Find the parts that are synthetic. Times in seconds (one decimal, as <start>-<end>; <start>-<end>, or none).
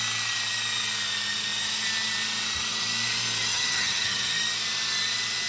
3.5-4.3